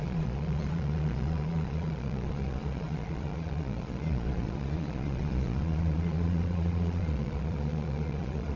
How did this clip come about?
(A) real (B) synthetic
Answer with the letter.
B